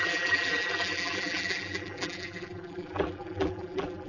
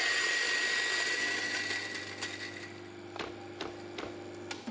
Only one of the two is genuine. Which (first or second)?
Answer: second